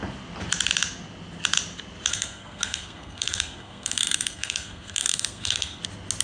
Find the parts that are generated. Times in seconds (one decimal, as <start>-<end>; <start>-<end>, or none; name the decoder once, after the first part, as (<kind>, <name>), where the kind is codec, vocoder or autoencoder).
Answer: 2.1-5.8 (codec, SNAC)

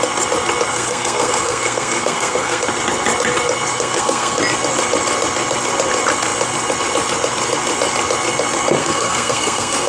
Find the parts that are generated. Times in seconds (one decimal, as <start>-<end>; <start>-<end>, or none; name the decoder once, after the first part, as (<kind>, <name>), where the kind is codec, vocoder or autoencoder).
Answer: 0.7-2.6 (codec, SNAC); 3.7-4.4; 8.8-9.9